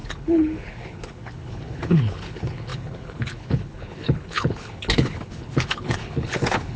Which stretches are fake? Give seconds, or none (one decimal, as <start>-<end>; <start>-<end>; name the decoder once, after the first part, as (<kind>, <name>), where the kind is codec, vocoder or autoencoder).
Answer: 0.0-6.8 (codec, HILCodec)